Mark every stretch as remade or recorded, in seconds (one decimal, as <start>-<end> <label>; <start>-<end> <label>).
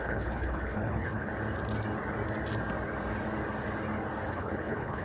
0.0-1.3 remade; 1.3-4.3 recorded; 4.3-5.0 remade